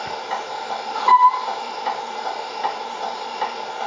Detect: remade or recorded recorded